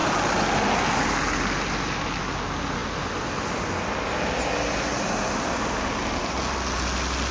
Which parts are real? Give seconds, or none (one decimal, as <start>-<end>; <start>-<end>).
0.0-7.3